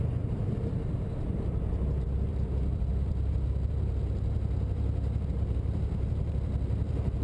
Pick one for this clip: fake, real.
fake